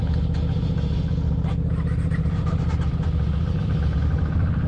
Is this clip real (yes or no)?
yes